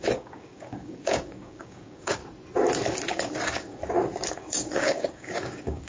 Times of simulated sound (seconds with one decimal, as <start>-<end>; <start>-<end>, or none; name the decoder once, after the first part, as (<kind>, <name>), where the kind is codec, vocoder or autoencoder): 0.0-2.2 (codec, DAC); 3.1-3.8; 4.3-5.9